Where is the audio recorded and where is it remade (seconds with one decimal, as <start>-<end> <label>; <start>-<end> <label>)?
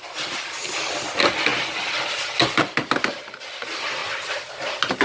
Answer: 0.0-5.0 recorded